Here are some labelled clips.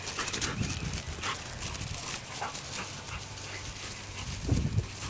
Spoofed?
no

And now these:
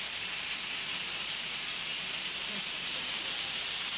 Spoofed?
yes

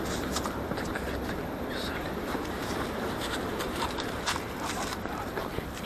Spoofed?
yes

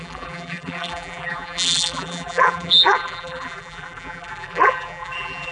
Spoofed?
yes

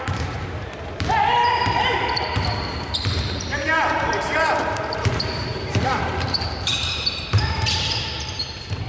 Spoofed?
yes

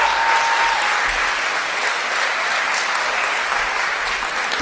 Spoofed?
no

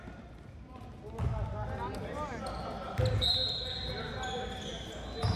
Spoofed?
no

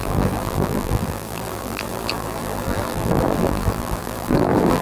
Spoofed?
yes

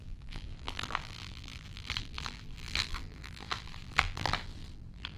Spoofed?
yes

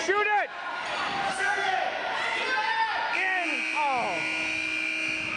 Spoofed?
no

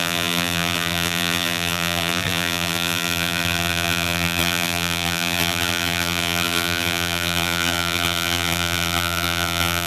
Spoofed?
yes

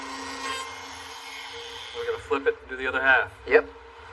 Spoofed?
no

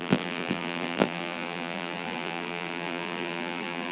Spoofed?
yes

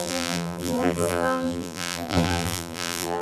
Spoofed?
yes